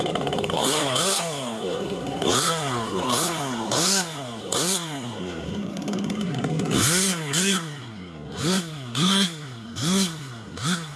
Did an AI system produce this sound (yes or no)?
yes